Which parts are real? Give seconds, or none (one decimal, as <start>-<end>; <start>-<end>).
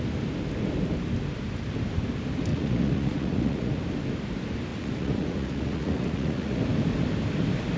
0.0-2.5; 3.8-4.7; 6.6-7.8